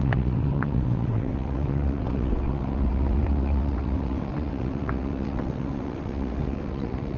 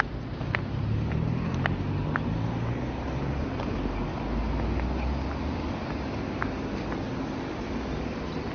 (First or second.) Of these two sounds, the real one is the second